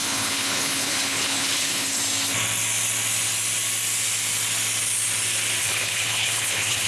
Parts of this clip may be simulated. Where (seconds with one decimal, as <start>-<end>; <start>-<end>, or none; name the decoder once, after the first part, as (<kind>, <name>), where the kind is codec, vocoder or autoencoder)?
0.0-2.0 (codec, HILCodec); 5.6-6.9